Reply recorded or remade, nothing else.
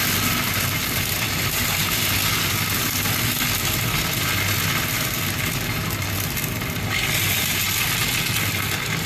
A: recorded